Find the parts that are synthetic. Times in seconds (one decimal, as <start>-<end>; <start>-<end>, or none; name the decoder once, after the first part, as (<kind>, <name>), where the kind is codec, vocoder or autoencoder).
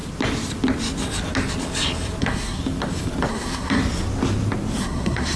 2.2-2.6 (codec, SNAC); 3.3-3.8; 4.8-5.4